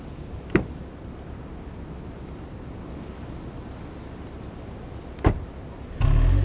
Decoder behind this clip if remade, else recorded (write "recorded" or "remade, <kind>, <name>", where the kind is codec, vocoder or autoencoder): recorded